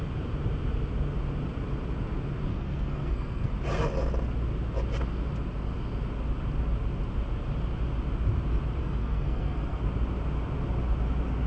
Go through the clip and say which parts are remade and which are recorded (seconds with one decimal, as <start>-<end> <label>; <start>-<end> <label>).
0.0-2.5 recorded; 2.5-3.5 remade; 3.5-8.8 recorded; 8.8-9.8 remade; 9.8-11.5 recorded